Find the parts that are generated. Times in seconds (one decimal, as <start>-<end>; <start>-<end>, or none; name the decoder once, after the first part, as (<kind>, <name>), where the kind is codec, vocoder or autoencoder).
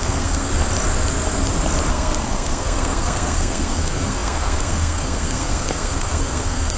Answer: 0.0-0.5 (codec, SNAC); 1.9-6.8